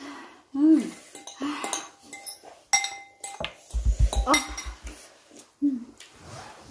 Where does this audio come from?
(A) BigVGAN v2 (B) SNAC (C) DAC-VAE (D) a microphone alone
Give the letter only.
D